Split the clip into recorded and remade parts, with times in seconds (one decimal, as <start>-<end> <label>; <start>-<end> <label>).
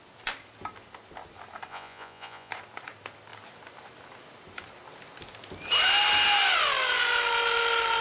0.0-1.7 recorded; 1.7-2.5 remade; 2.5-8.0 recorded